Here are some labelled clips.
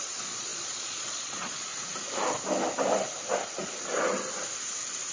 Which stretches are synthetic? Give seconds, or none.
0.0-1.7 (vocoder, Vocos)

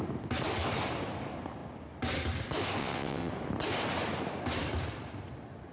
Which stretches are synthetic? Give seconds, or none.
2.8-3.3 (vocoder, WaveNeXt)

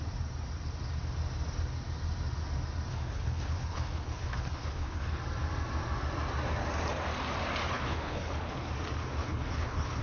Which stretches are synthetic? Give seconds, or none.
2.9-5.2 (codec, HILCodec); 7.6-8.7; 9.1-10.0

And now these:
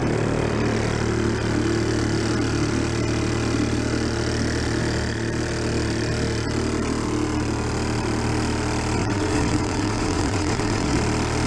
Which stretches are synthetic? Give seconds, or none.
9.0-11.0 (vocoder, WaveNeXt)